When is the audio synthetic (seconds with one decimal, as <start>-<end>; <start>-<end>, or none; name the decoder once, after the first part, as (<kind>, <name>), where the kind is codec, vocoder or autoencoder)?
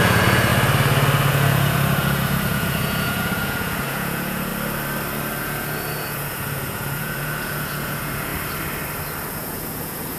0.0-0.5 (vocoder, Vocos); 1.3-4.5; 5.4-8.3; 9.3-10.2